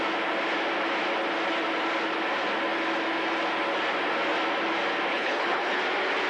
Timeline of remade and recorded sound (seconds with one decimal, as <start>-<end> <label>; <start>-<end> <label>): 0.0-5.1 recorded; 5.1-5.8 remade; 5.8-6.3 recorded